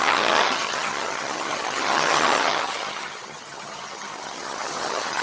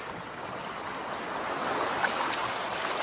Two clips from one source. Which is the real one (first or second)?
second